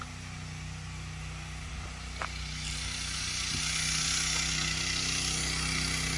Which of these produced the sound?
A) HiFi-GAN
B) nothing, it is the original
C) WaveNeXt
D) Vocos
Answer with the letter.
B